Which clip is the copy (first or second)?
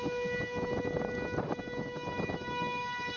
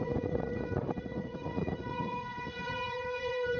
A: second